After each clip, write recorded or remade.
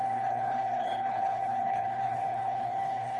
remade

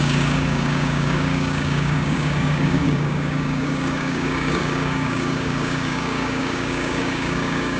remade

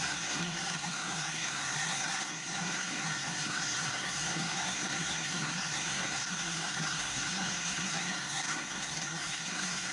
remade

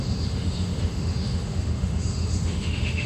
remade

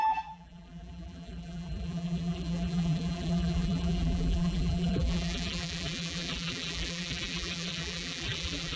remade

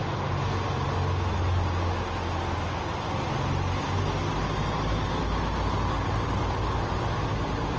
recorded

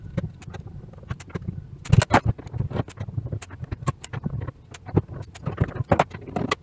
recorded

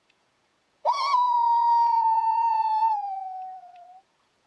remade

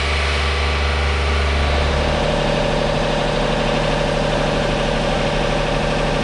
recorded